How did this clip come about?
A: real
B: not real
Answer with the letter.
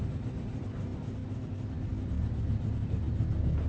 A